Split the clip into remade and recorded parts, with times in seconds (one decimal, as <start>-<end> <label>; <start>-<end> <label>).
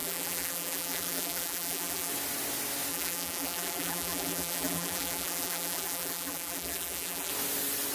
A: 0.0-2.1 remade; 2.1-2.9 recorded; 2.9-7.3 remade; 7.3-7.9 recorded